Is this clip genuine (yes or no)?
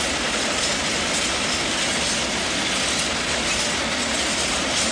yes